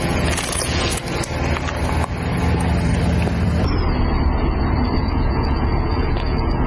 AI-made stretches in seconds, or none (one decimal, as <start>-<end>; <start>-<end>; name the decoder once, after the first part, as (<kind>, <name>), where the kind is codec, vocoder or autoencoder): 0.0-1.0 (vocoder, Vocos); 5.0-6.7